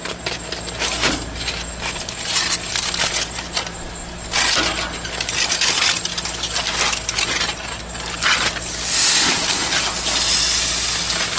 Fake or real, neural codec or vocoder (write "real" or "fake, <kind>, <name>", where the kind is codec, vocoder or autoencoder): real